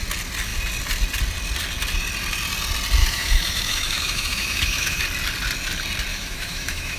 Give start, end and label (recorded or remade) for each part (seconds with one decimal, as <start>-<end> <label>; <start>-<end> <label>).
0.0-3.0 recorded; 3.0-5.0 remade; 5.0-6.1 recorded; 6.1-7.0 remade